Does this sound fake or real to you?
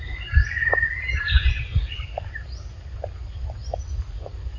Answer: real